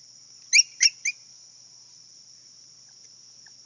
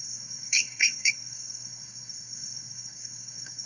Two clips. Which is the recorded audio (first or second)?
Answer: first